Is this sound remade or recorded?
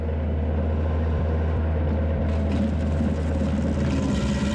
recorded